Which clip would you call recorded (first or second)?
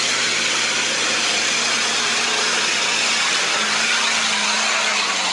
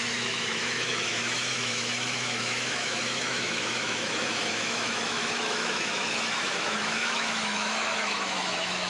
first